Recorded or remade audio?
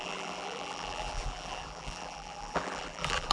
remade